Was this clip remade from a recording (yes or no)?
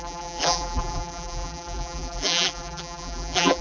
yes